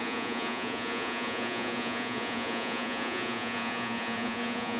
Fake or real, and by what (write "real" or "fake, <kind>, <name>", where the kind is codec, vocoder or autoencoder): fake, vocoder, Vocos